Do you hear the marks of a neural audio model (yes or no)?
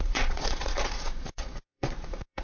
yes